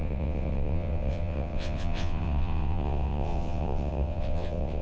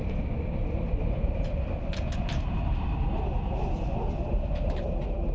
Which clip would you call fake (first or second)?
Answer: first